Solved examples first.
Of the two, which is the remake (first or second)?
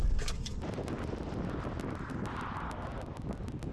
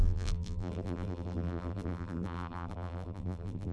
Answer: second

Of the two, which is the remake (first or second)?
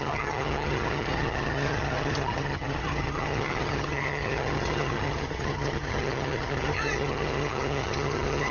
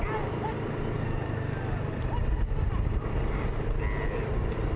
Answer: first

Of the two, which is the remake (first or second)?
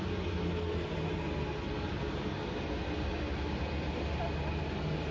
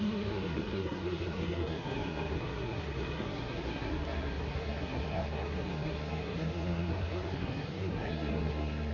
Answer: second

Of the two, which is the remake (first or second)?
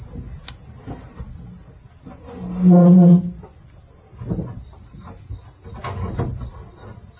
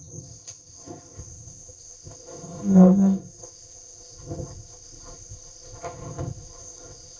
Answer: second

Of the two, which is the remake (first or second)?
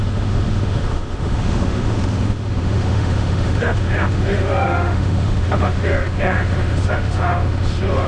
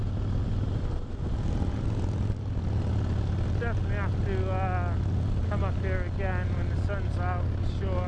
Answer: first